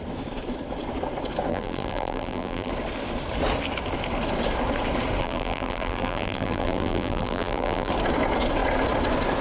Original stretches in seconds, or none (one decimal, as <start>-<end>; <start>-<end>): 0.0-1.5; 2.7-5.2; 7.9-9.4